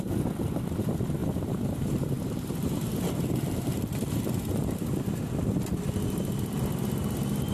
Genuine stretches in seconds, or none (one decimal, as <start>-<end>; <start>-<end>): 0.0-1.2; 5.2-7.5